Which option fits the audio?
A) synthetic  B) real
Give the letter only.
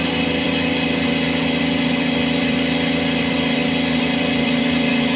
A